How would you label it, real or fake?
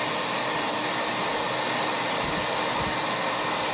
real